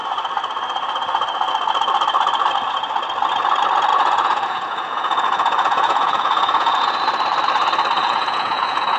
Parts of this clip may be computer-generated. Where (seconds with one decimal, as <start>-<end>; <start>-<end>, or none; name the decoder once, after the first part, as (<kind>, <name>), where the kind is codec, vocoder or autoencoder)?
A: 3.9-7.0 (vocoder, Vocos); 8.0-9.0